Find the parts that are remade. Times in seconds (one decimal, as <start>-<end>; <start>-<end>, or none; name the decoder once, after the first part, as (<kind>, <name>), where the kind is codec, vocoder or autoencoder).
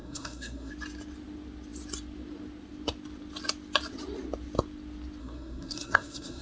0.0-0.7 (codec, SNAC); 5.2-6.4